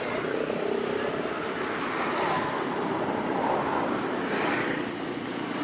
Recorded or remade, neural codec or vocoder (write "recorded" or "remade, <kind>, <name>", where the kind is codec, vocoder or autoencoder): remade, vocoder, BigVGAN v2